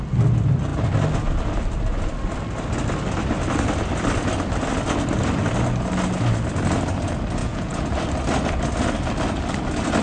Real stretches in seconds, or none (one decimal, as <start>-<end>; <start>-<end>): 0.0-7.4; 7.9-10.0